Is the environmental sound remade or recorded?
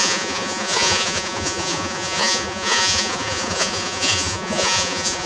remade